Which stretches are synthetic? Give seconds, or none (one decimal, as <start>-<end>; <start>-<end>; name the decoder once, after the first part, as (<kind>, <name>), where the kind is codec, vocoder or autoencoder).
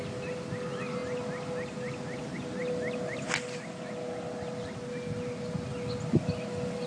none